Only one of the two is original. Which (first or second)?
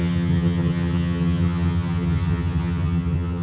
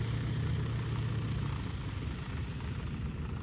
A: second